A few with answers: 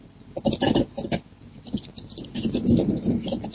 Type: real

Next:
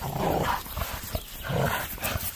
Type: real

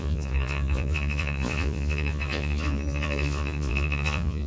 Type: fake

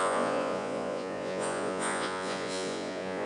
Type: fake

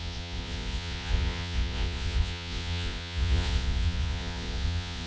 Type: fake